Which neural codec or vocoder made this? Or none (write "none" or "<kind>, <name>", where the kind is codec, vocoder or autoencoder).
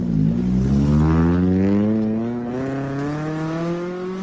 none